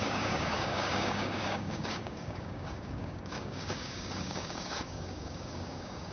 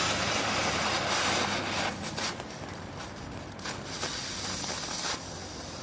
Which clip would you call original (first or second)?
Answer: second